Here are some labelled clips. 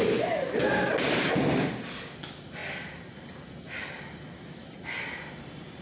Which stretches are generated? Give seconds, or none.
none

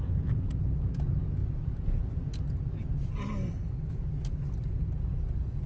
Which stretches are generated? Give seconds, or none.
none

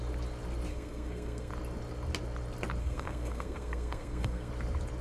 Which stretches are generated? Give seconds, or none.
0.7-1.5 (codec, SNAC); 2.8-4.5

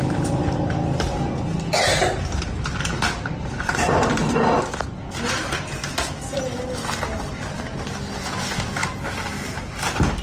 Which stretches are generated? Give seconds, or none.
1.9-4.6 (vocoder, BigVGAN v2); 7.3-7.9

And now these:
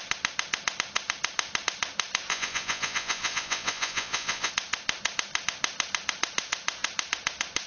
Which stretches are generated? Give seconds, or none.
2.3-4.5 (vocoder, Vocos)